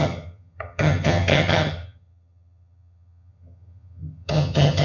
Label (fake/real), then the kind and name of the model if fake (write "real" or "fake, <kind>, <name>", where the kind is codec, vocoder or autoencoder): fake, vocoder, HiFi-GAN